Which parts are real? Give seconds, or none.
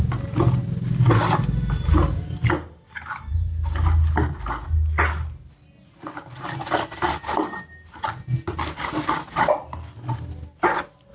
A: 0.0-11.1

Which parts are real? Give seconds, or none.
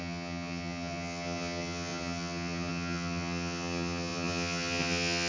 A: none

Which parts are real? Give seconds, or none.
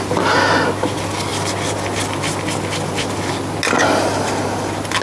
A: 0.0-5.0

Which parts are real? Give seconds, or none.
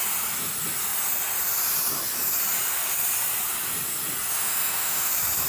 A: 0.0-4.3; 5.1-5.5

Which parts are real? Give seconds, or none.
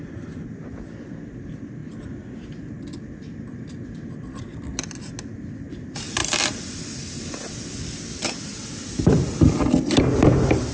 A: 0.0-10.7